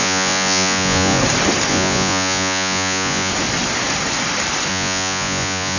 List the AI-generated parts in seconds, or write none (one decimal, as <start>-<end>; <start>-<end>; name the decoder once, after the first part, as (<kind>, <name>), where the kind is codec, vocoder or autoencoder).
0.0-1.2 (vocoder, Vocos); 1.7-3.3; 4.7-5.8